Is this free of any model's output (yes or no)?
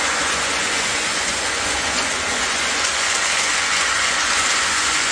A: no